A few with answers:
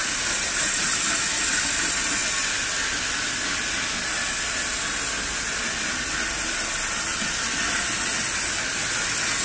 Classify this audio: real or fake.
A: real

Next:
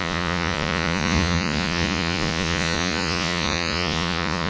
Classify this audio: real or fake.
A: fake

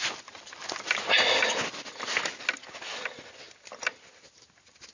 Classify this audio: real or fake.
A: real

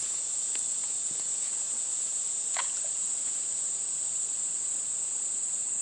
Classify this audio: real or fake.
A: fake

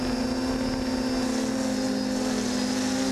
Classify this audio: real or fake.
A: real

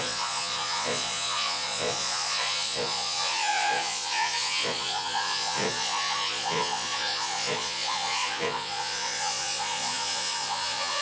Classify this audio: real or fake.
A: fake